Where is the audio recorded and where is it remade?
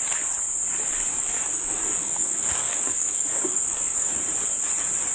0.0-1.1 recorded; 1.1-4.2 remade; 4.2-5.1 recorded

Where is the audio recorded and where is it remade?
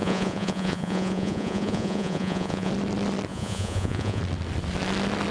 0.0-2.7 remade; 2.7-3.3 recorded; 3.3-4.2 remade; 4.2-5.3 recorded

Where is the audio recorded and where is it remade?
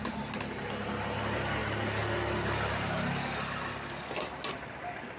0.0-5.2 recorded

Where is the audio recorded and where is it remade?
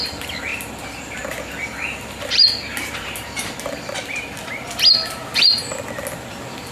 0.0-0.5 recorded; 0.5-1.2 remade; 1.2-1.7 recorded; 1.7-4.5 remade; 4.5-6.7 recorded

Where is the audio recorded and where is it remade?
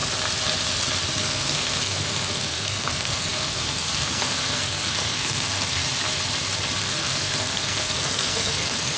0.0-1.2 recorded; 1.2-5.8 remade; 5.8-6.8 recorded; 6.8-9.0 remade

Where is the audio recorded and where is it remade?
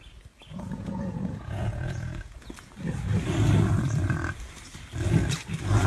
0.0-0.5 recorded; 0.5-2.5 remade; 2.5-5.9 recorded